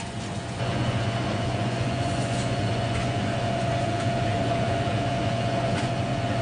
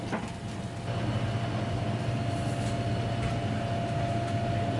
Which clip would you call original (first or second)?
second